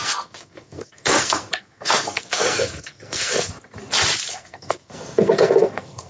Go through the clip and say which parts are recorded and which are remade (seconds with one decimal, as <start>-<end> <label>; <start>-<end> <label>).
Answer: 0.0-3.5 remade; 3.5-4.3 recorded; 4.3-6.1 remade